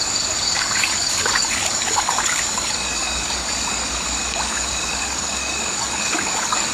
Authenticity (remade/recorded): remade